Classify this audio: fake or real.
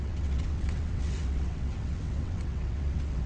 fake